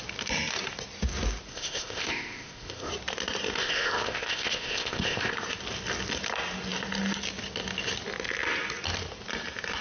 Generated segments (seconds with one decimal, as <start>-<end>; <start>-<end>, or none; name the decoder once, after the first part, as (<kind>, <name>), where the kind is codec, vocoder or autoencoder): 1.5-2.9 (codec, ZipCodec); 3.6-5.3